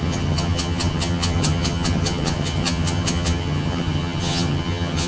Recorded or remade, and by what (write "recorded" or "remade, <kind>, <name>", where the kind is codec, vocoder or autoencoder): remade, vocoder, HiFi-GAN